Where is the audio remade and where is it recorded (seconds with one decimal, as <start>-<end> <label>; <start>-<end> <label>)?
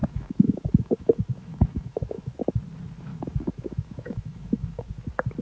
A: 0.0-2.6 remade; 2.6-3.1 recorded; 3.1-4.9 remade; 4.9-5.4 recorded